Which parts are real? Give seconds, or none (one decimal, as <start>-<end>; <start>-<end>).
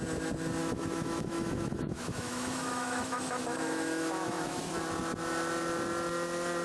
0.0-0.6; 4.6-6.6